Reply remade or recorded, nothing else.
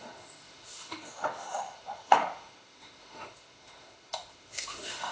remade